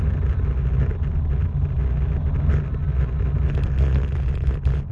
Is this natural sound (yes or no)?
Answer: yes